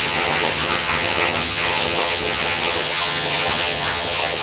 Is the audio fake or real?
fake